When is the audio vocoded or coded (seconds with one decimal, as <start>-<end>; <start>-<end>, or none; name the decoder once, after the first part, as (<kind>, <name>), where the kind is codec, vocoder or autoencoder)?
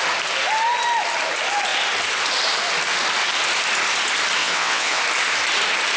4.4-5.0 (vocoder, WaveNeXt)